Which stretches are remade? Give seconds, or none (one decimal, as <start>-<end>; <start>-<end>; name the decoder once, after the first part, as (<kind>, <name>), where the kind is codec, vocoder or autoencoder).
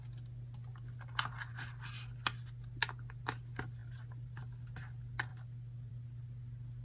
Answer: 0.7-1.5 (vocoder, BigVGAN v2); 3.8-4.4